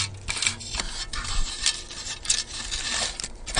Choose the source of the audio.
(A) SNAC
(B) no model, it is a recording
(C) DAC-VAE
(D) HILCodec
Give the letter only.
B